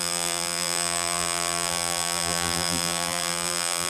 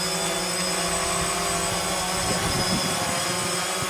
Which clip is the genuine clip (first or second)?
second